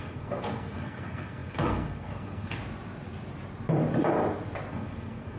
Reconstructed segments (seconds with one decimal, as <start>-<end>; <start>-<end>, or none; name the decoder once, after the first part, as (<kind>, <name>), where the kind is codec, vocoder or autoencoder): 0.0-2.6 (codec, SNAC); 4.7-5.4